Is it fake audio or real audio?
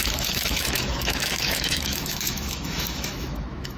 fake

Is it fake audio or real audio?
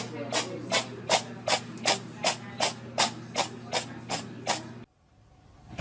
real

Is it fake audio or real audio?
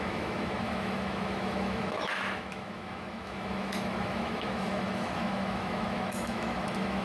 fake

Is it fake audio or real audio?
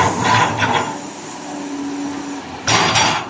real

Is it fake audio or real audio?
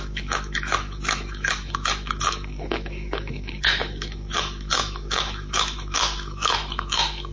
fake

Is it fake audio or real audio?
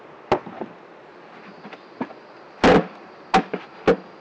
real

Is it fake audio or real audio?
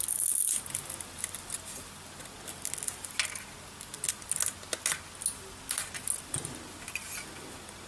real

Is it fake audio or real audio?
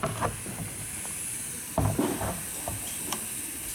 real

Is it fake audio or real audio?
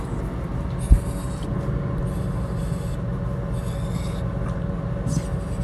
real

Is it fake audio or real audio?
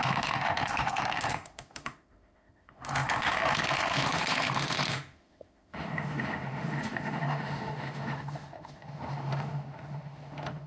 fake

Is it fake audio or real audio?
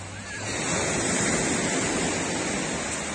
real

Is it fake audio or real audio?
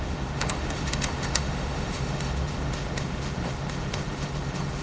fake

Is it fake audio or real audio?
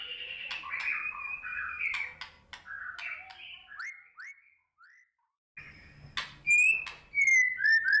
real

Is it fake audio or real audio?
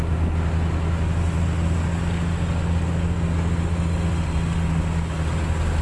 real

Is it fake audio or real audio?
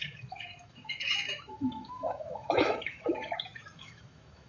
fake